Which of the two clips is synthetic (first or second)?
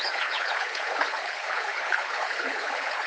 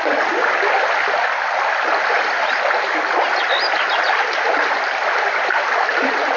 first